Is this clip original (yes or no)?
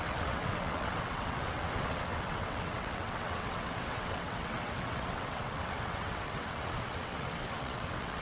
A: no